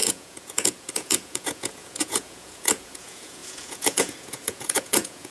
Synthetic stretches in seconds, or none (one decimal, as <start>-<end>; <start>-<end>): 0.0-5.3